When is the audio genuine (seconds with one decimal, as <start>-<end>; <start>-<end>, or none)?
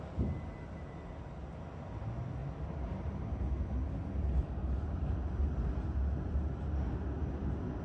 0.0-7.8